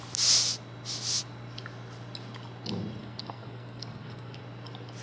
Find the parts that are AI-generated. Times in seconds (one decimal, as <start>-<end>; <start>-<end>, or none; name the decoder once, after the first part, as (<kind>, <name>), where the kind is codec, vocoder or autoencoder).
3.0-4.4 (codec, SNAC)